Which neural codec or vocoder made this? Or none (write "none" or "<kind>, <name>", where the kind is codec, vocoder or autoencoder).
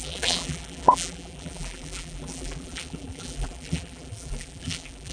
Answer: vocoder, BigVGAN v2